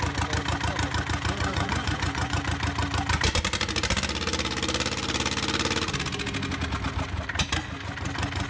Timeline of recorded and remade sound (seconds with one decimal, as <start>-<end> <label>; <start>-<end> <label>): 0.0-1.5 recorded; 1.5-2.4 remade; 2.4-8.5 recorded

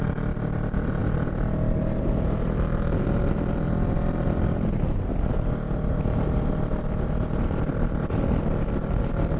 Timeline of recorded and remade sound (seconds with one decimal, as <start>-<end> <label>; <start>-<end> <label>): 0.0-9.4 recorded

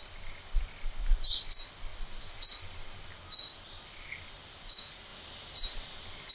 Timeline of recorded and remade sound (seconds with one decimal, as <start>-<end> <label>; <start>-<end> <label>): 0.0-6.3 recorded